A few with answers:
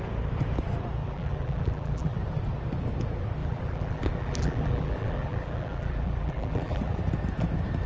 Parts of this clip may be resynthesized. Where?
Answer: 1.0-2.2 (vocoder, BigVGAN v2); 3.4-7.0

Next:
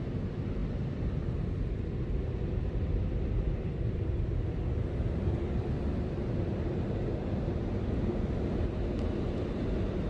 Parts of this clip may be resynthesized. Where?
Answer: 0.6-5.4 (vocoder, BigVGAN v2)

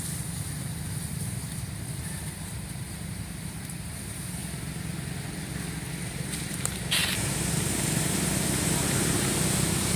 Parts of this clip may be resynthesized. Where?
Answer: 0.0-4.4 (vocoder, BigVGAN v2); 5.9-10.0

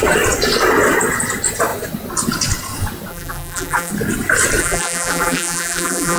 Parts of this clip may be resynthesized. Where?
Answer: 3.1-3.9 (vocoder, BigVGAN v2); 4.6-6.2

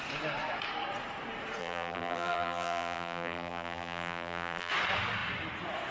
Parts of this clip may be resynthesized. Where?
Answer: 1.6-4.7 (vocoder, BigVGAN v2)